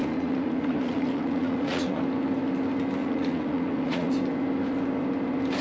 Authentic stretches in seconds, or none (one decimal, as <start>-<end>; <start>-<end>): 2.0-3.0; 4.1-5.6